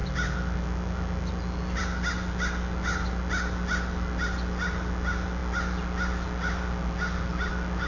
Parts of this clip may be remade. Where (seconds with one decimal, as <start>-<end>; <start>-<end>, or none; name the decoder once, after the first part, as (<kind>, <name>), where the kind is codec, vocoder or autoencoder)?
none